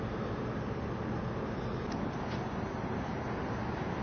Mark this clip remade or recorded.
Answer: recorded